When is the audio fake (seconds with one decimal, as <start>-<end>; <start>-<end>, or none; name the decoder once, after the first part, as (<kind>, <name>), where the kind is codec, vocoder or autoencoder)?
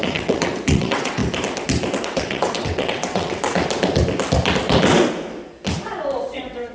0.0-1.2 (vocoder, WaveNeXt); 2.0-3.4; 6.2-6.7